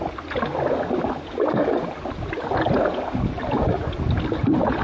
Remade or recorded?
recorded